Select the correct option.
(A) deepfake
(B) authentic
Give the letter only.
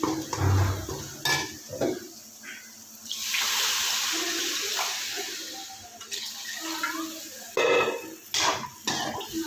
B